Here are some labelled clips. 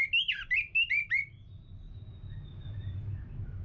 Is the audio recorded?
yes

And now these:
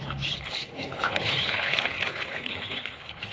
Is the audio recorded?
no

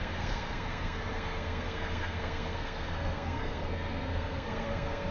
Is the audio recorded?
no